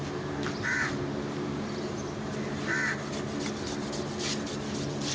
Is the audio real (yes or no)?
yes